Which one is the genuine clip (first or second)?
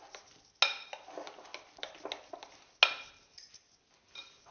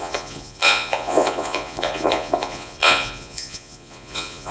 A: first